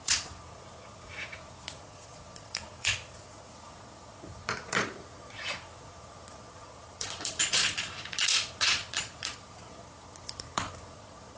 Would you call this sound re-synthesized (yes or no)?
yes